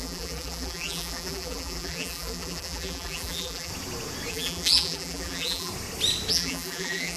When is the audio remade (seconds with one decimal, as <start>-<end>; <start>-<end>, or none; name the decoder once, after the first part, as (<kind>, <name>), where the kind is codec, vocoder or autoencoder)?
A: 0.0-3.7 (vocoder, BigVGAN v2); 4.3-5.7; 6.3-7.2